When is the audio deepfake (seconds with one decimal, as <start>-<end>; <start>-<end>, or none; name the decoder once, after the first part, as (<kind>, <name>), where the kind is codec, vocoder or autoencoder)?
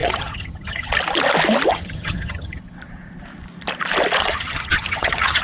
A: 0.0-0.9 (vocoder, HiFi-GAN); 1.7-2.6; 4.2-5.4